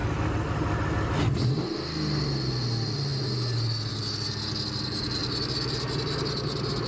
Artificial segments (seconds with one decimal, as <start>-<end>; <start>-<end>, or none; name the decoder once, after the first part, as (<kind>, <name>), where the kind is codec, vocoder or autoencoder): none